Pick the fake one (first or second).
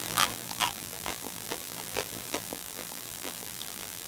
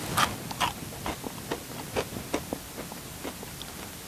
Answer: first